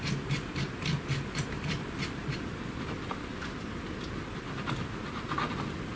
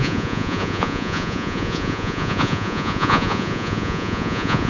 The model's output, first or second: second